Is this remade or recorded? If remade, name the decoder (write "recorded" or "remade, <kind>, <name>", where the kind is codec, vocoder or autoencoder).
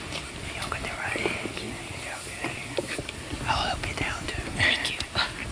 recorded